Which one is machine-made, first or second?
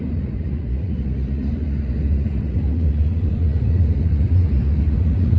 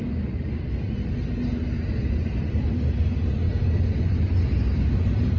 first